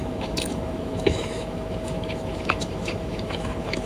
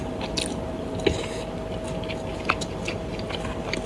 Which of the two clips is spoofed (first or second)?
first